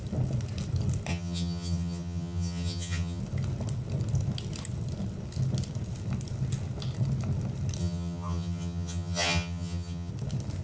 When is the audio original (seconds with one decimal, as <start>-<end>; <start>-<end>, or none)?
0.0-1.1; 3.2-7.8; 10.1-10.6